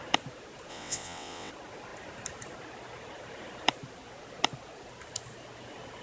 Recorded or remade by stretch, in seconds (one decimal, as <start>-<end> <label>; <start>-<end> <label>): 0.0-0.7 recorded; 0.7-1.5 remade; 1.5-6.0 recorded